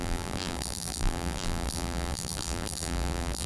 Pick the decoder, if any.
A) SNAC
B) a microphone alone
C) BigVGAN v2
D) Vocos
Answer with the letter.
C